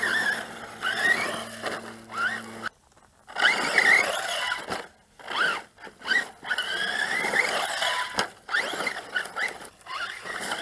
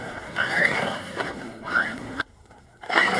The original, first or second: first